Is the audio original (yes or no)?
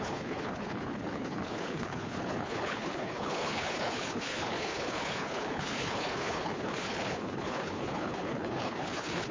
no